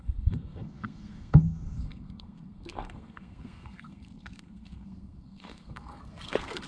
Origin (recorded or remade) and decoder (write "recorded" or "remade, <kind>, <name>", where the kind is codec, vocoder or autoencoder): remade, codec, SNAC